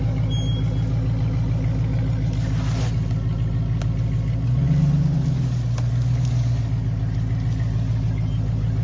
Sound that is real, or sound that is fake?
real